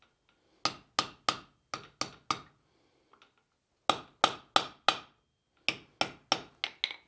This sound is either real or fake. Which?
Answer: real